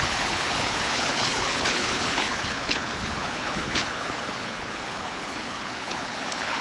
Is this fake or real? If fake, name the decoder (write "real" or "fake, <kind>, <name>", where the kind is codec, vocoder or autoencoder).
fake, codec, HILCodec